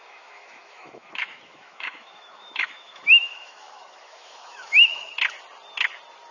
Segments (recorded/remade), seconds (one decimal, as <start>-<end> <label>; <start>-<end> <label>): 0.0-5.1 remade; 5.1-6.3 recorded